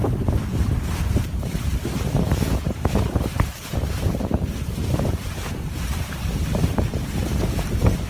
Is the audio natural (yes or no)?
no